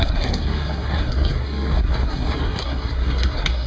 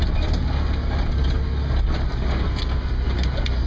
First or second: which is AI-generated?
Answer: first